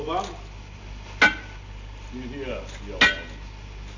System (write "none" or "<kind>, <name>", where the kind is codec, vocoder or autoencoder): none